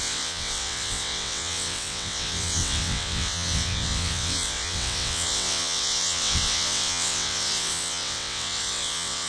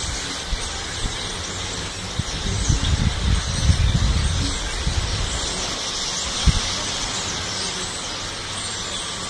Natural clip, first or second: second